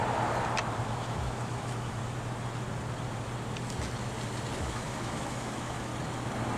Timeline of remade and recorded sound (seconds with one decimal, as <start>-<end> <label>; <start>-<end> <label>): 0.0-0.8 recorded; 0.8-2.0 remade; 2.0-4.6 recorded; 4.6-5.9 remade; 5.9-6.6 recorded